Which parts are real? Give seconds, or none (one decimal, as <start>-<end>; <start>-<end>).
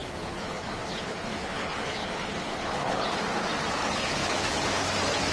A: 3.2-3.8; 4.7-5.3